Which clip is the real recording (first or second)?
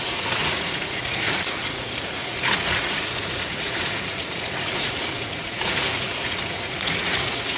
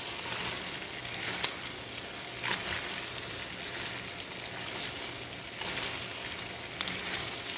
second